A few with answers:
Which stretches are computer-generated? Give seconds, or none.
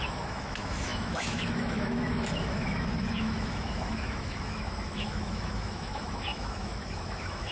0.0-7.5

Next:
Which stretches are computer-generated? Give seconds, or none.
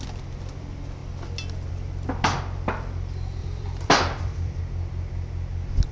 3.4-4.6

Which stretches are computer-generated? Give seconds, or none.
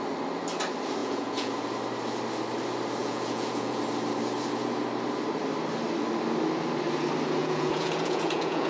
1.0-1.5; 3.0-3.8; 7.4-8.7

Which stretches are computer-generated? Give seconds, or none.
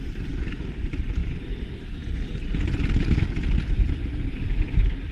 0.0-1.2; 4.3-5.1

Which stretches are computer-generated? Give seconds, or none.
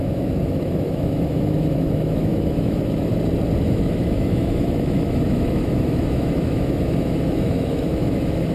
0.0-3.1; 3.6-8.5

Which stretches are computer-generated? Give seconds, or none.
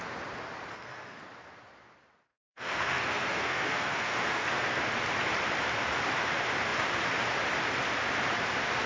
0.7-1.2; 2.3-4.8